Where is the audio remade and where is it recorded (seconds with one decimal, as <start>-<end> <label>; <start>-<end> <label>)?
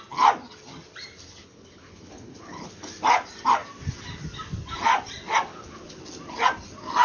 0.0-1.4 recorded; 1.4-2.7 remade; 2.7-5.5 recorded; 5.5-6.0 remade; 6.0-7.0 recorded